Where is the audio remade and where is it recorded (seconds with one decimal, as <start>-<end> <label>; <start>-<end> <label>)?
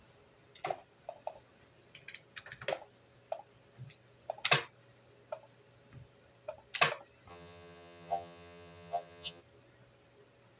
0.0-7.3 recorded; 7.3-9.4 remade; 9.4-10.6 recorded